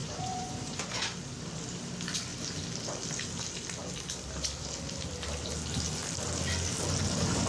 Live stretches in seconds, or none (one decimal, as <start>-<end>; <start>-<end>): 0.8-7.5